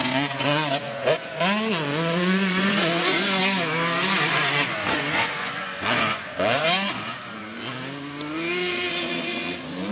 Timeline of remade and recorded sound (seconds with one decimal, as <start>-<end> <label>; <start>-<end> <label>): 0.0-3.4 remade; 3.4-4.3 recorded; 4.3-7.4 remade; 7.4-8.9 recorded; 8.9-9.9 remade